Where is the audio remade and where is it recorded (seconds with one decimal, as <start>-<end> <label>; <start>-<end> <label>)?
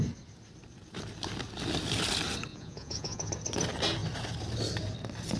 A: 0.0-2.5 recorded; 2.5-3.3 remade; 3.3-5.4 recorded